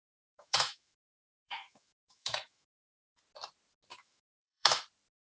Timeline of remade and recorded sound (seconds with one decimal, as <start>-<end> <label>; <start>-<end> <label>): 0.0-3.2 remade; 3.2-3.9 recorded; 3.9-4.8 remade; 4.8-5.4 recorded